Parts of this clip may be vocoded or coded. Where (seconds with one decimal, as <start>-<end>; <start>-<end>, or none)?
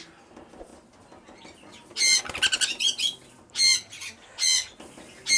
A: none